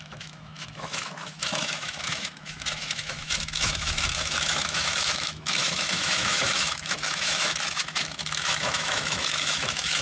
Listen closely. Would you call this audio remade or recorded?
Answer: remade